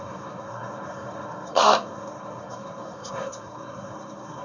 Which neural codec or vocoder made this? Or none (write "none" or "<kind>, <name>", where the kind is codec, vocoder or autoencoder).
codec, SNAC